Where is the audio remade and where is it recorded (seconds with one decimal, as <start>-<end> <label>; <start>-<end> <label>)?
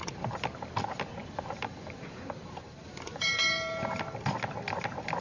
0.0-0.7 remade; 0.7-1.2 recorded; 1.2-4.3 remade; 4.3-5.2 recorded